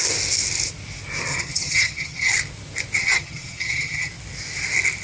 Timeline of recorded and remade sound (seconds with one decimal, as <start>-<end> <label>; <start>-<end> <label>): 0.0-1.3 recorded; 1.3-2.3 remade; 2.3-3.0 recorded; 3.0-4.1 remade; 4.1-5.0 recorded